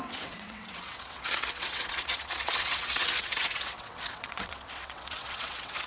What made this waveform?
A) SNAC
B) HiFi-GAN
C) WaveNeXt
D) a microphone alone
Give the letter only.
C